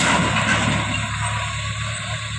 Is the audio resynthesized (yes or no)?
no